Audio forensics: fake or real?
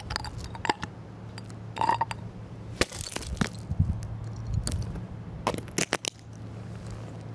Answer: real